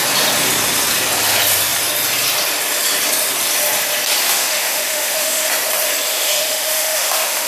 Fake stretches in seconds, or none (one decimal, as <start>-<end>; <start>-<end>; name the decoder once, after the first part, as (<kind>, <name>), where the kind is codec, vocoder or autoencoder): 4.2-5.5 (autoencoder, DAC-VAE); 6.1-7.5